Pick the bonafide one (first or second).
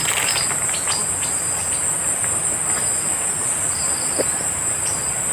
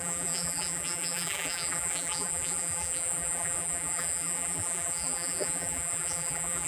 first